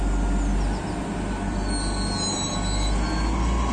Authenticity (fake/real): real